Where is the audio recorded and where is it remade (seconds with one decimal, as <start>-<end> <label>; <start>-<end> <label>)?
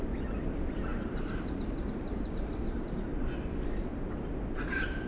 0.0-0.9 recorded; 0.9-2.8 remade; 2.8-5.1 recorded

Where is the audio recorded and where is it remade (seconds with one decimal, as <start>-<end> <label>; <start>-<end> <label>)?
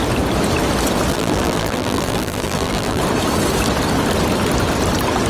0.0-1.1 recorded; 1.1-3.0 remade; 3.0-5.3 recorded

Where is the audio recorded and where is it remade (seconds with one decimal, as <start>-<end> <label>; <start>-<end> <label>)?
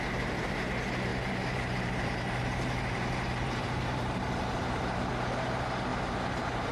0.0-1.1 recorded; 1.1-5.1 remade; 5.1-5.9 recorded; 5.9-6.7 remade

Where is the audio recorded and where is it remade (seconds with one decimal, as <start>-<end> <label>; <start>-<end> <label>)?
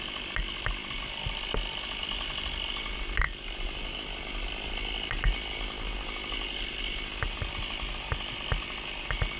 0.0-9.4 recorded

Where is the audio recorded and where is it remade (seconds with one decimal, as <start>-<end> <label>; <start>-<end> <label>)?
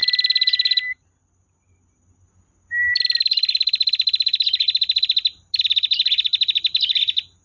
0.0-7.4 recorded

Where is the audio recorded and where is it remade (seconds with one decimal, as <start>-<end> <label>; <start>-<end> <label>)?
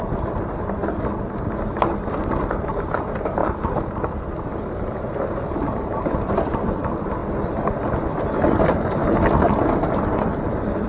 0.0-0.8 remade; 0.8-2.1 recorded; 2.1-7.2 remade; 7.2-7.9 recorded; 7.9-9.0 remade; 9.0-10.9 recorded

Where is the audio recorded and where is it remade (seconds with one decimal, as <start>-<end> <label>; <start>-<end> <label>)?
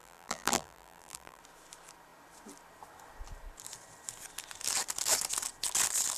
0.0-1.4 remade; 1.4-6.2 recorded